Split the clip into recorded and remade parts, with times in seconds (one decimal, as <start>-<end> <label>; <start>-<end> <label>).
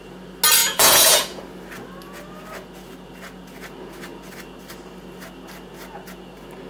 0.0-0.6 recorded; 0.6-1.4 remade; 1.4-6.7 recorded